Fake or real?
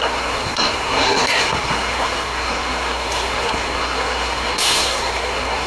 fake